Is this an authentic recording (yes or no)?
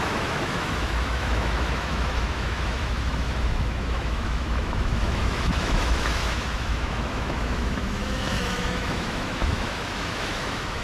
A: no